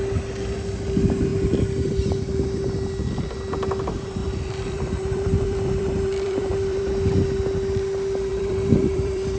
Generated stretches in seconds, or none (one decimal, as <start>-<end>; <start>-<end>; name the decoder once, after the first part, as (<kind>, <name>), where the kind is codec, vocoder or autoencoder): 4.2-6.8 (vocoder, BigVGAN v2); 8.3-9.4